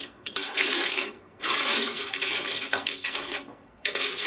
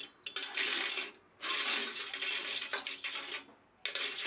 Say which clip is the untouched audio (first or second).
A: second